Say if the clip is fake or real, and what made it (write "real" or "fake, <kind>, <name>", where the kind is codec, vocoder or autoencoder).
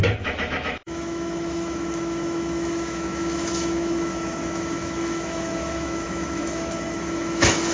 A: fake, autoencoder, DAC-VAE